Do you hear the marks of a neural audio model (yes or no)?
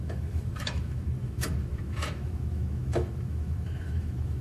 yes